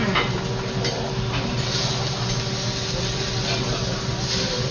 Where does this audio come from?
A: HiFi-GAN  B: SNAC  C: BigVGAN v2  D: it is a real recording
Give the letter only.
D